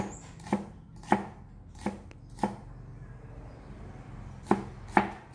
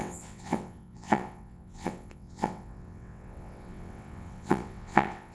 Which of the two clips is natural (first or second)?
first